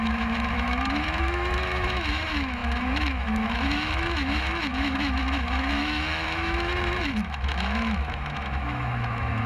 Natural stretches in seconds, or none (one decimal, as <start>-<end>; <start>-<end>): none